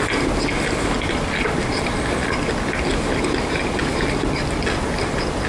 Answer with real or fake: real